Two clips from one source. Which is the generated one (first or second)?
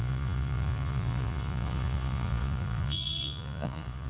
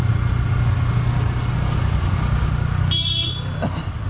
first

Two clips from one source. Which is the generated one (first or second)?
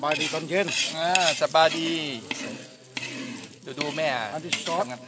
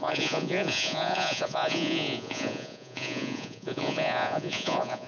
second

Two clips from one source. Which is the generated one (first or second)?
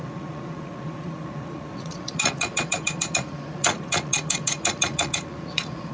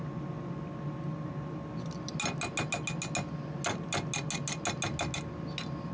first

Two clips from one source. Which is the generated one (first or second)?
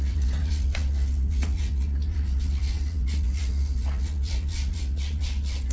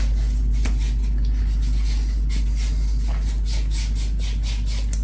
first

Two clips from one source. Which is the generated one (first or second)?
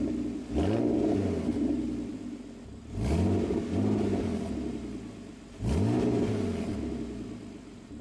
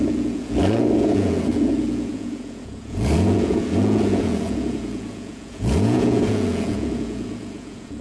second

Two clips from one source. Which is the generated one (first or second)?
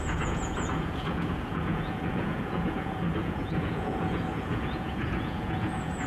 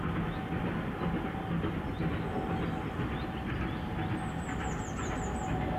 first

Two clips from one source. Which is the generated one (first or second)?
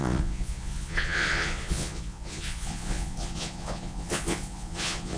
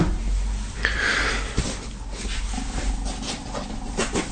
first